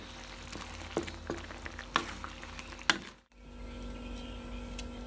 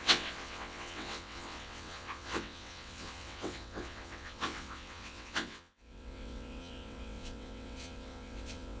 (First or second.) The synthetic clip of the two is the second